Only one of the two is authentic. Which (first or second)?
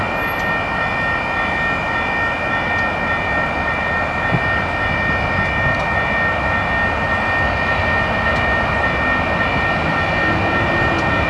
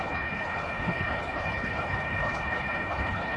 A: first